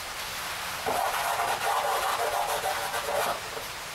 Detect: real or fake real